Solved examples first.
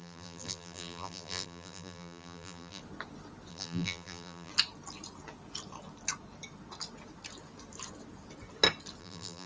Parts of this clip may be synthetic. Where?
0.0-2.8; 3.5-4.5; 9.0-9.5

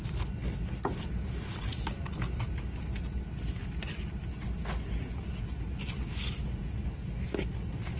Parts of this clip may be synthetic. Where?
none